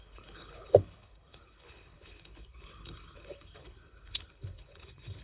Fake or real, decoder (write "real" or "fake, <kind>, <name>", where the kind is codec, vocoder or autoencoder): fake, codec, HILCodec